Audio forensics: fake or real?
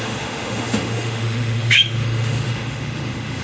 fake